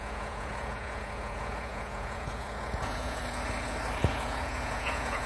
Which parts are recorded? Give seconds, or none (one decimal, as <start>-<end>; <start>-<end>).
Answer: 3.2-4.1